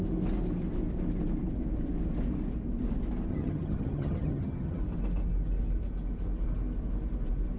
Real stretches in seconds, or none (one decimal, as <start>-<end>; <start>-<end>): 0.0-3.3; 4.8-7.6